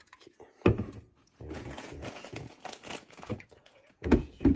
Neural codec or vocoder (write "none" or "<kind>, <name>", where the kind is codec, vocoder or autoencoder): vocoder, Vocos